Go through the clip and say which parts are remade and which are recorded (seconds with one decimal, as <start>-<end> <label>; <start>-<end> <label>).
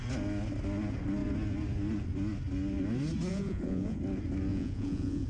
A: 0.0-3.3 recorded; 3.3-4.0 remade; 4.0-4.5 recorded; 4.5-5.3 remade